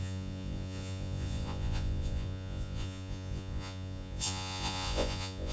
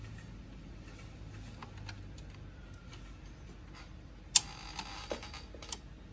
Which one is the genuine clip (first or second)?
second